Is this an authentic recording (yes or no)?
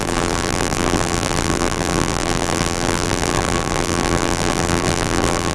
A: no